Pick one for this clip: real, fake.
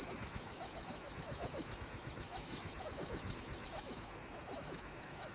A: fake